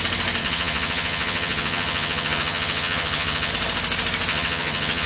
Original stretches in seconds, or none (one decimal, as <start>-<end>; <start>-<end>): 0.0-0.4; 3.5-4.3